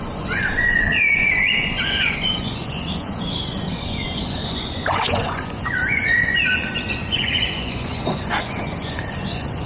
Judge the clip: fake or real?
fake